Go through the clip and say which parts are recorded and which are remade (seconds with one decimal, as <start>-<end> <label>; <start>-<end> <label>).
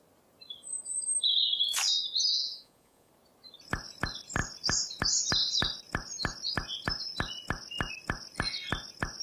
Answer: 0.0-2.3 recorded; 2.3-3.1 remade; 3.1-9.2 recorded